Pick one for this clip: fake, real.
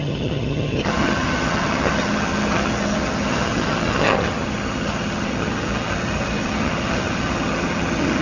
fake